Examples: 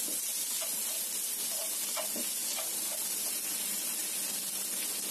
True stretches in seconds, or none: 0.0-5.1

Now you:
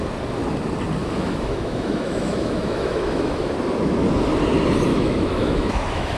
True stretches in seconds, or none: 0.0-1.0; 3.5-4.9

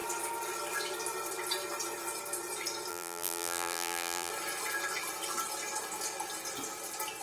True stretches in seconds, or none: 0.0-2.9; 4.3-7.2